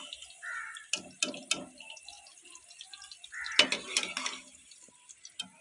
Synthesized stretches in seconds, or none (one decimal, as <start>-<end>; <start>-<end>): none